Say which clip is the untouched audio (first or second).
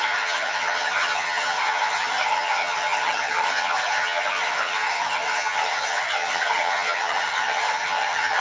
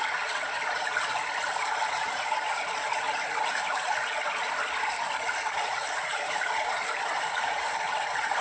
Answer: second